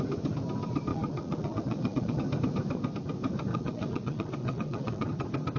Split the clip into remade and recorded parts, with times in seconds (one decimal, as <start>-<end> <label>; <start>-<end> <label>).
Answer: 0.0-0.9 recorded; 0.9-2.2 remade; 2.2-3.5 recorded; 3.5-5.1 remade; 5.1-5.6 recorded